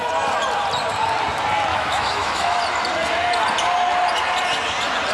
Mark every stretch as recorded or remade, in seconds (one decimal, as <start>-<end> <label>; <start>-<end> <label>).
0.0-1.7 recorded; 1.7-2.6 remade; 2.6-5.1 recorded